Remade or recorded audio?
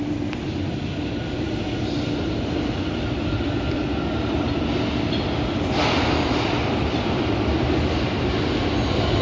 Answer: recorded